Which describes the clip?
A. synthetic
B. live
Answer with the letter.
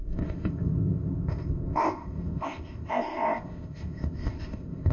A